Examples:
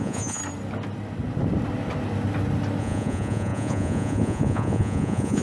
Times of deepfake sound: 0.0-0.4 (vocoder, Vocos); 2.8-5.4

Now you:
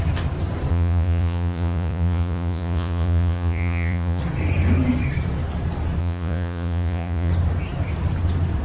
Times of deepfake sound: 0.7-4.2 (vocoder, Vocos); 6.0-7.3